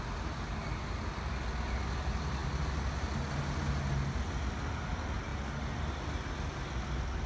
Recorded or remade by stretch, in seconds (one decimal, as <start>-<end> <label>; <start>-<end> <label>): 0.0-7.3 recorded